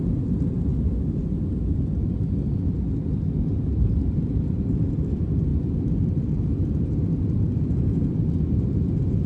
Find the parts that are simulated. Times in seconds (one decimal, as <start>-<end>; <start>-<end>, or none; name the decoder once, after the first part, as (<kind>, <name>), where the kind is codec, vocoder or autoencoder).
0.0-5.5 (vocoder, BigVGAN v2); 6.2-9.3

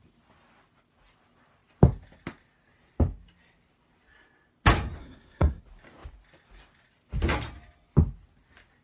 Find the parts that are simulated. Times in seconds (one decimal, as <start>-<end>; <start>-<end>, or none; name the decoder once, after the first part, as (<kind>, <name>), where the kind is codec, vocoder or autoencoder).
5.0-5.6 (codec, SNAC)

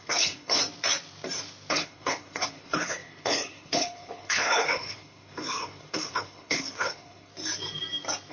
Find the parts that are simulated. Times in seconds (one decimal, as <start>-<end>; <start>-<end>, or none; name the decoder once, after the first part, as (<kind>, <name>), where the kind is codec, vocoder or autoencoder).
0.0-0.6 (codec, HILCodec); 1.7-7.3

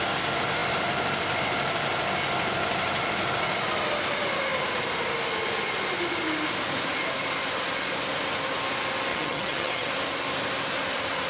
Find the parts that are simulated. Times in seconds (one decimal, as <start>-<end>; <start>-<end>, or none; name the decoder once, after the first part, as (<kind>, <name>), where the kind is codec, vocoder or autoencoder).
9.1-9.9 (vocoder, HiFi-GAN)

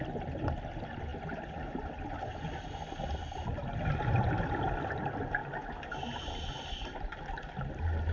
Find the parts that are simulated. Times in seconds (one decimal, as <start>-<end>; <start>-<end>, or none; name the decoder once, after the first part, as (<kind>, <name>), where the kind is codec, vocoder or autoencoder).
none